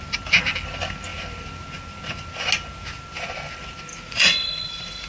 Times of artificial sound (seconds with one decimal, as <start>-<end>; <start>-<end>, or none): 3.9-5.1